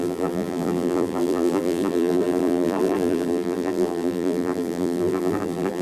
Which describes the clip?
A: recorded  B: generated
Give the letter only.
B